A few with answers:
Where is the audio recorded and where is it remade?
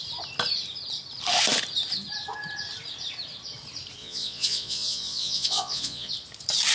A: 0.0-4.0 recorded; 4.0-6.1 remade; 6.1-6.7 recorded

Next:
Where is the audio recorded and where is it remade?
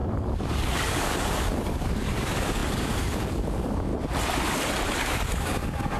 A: 0.0-3.9 remade; 3.9-5.0 recorded; 5.0-6.0 remade